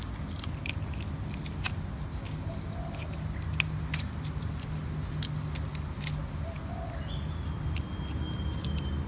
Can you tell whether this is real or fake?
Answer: real